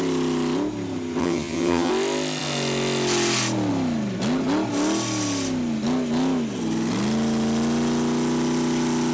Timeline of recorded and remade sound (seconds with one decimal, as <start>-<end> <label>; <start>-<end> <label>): 0.0-1.2 recorded; 1.2-1.9 remade; 1.9-9.1 recorded